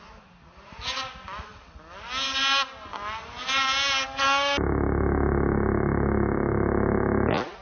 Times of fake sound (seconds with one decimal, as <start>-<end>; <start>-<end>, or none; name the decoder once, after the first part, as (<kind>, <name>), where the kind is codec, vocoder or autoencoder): none